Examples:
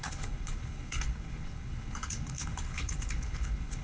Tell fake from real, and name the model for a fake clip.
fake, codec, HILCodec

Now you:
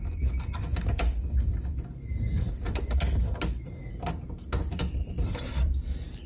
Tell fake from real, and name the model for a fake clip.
real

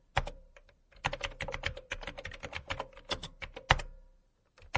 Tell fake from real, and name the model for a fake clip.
real